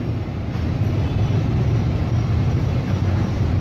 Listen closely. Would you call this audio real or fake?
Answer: real